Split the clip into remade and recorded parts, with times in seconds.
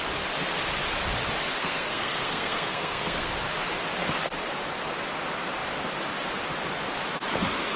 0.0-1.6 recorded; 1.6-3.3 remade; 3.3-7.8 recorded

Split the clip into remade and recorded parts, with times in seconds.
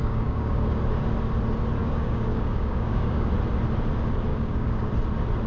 0.0-0.8 remade; 0.8-1.8 recorded; 1.8-3.3 remade; 3.3-4.3 recorded; 4.3-4.9 remade; 4.9-5.5 recorded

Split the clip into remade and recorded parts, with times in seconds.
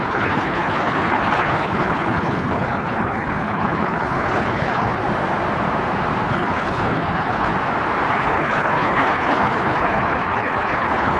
0.0-5.0 remade; 5.0-6.3 recorded; 6.3-7.5 remade; 7.5-8.1 recorded; 8.1-11.2 remade